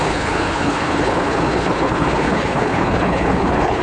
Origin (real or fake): fake